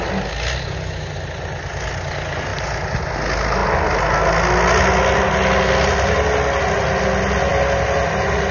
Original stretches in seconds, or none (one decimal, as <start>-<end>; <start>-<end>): 0.0-8.5

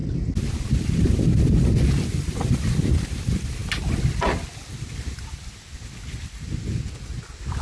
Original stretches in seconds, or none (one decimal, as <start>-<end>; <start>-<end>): 0.0-7.6

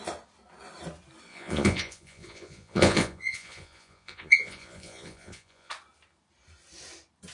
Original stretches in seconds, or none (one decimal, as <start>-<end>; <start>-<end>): 0.0-1.3; 5.7-7.3

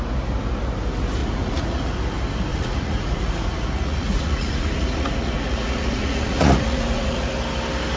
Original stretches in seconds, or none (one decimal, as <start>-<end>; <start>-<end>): 0.0-1.2; 1.9-2.5; 7.3-8.0